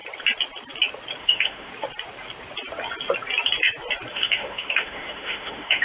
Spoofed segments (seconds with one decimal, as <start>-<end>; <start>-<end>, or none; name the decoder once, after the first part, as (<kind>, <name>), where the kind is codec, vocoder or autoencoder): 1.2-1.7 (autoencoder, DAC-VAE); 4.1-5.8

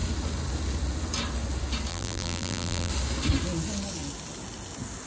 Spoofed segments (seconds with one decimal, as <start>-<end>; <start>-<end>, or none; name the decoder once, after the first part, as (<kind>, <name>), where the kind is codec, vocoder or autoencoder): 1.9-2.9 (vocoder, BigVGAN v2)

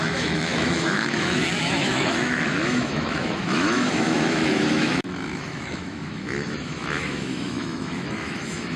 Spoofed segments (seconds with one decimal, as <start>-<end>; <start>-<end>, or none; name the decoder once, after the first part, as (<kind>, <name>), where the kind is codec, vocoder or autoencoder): 0.0-8.8 (autoencoder, DAC-VAE)